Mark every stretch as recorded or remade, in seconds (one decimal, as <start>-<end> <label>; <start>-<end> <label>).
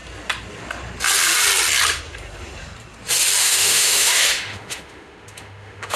0.0-3.4 recorded; 3.4-6.0 remade